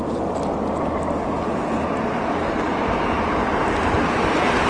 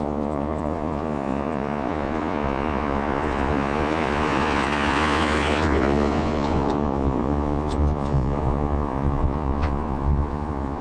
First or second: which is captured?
first